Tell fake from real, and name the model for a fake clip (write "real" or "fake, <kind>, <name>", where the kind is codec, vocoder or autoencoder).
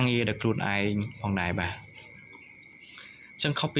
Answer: real